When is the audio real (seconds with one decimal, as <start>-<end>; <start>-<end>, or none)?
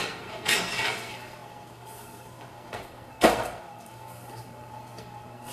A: none